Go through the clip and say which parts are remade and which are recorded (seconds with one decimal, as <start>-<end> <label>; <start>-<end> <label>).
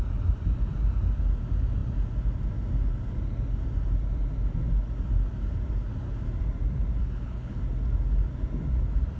0.0-7.0 recorded; 7.0-7.6 remade; 7.6-9.2 recorded